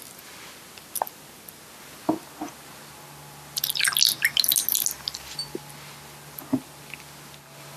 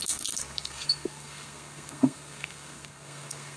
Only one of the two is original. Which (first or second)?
first